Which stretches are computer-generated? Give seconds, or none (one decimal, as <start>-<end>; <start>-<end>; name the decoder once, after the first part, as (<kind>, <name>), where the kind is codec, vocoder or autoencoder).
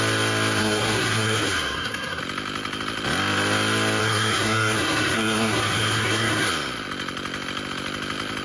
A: 0.6-2.2 (codec, SNAC); 4.0-6.5